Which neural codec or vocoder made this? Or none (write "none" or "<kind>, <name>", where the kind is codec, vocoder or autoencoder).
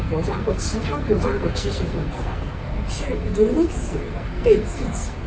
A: codec, SNAC